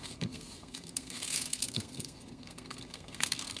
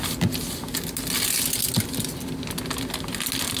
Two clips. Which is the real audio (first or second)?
second